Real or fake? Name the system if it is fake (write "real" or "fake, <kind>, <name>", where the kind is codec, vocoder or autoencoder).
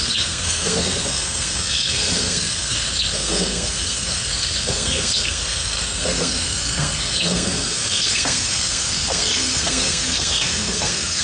fake, codec, SNAC